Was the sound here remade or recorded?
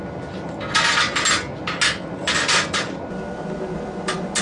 recorded